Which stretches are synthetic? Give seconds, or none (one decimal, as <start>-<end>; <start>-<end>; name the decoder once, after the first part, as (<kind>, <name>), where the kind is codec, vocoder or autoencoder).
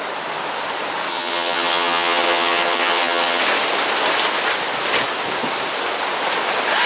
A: 1.1-3.4 (vocoder, HiFi-GAN)